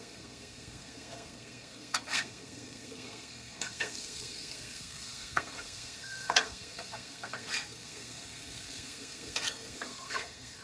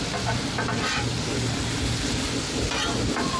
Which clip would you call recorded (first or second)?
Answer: second